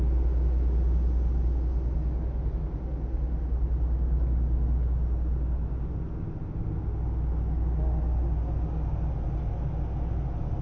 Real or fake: real